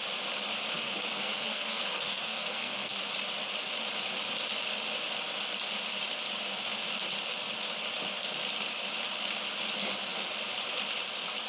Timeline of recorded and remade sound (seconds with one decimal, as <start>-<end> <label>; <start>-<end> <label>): 0.0-0.8 recorded; 0.8-3.0 remade; 3.0-11.5 recorded